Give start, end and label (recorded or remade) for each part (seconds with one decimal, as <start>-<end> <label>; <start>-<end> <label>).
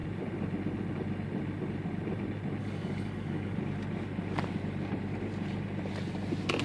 0.0-2.6 recorded; 2.6-3.6 remade; 3.6-6.6 recorded